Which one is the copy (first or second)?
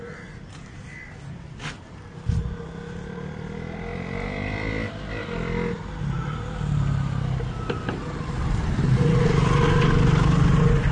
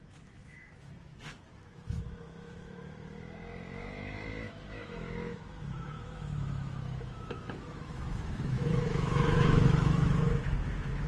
second